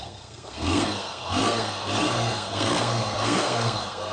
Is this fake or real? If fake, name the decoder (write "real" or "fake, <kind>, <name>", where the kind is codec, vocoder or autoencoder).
fake, codec, SNAC